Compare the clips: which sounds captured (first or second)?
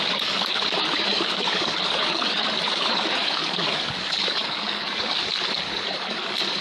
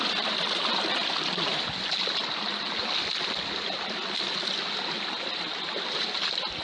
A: second